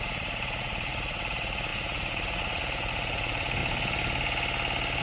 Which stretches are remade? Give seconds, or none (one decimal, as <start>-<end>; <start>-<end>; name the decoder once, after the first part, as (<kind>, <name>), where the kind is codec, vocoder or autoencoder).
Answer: 0.0-3.6 (vocoder, Vocos)